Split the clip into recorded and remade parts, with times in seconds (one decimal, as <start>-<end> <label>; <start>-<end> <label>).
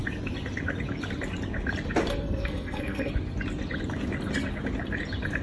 0.0-2.1 recorded; 2.1-3.1 remade; 3.1-5.4 recorded